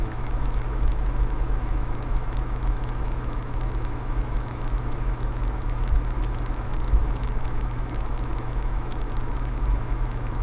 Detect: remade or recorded remade